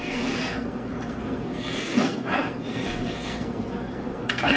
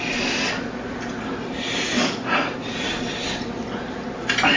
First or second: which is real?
second